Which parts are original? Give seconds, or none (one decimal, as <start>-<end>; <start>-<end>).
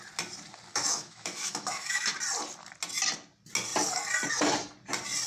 0.0-0.7; 2.1-5.3